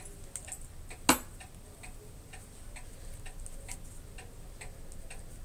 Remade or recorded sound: recorded